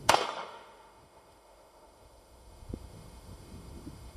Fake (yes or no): yes